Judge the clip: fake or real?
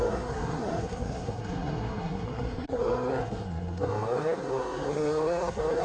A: fake